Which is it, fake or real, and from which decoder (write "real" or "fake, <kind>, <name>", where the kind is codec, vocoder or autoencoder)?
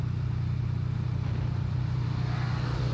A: real